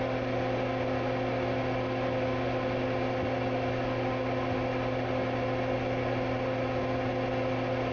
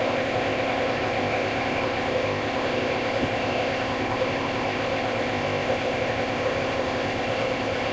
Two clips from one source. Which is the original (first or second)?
first